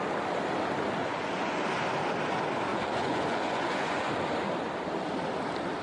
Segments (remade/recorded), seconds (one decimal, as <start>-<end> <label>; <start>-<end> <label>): 0.0-1.0 recorded; 1.0-1.6 remade; 1.6-2.7 recorded; 2.7-4.1 remade; 4.1-5.8 recorded